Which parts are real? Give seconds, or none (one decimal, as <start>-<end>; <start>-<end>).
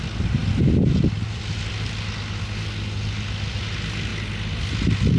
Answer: 0.0-5.2